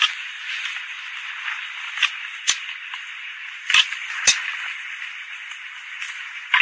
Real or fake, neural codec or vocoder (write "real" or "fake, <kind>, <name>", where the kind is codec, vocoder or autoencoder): real